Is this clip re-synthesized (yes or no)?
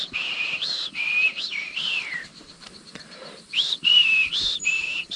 yes